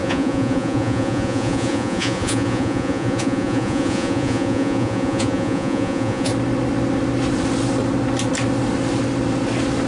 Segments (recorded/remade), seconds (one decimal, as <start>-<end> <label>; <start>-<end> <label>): 0.0-6.3 remade; 6.3-9.9 recorded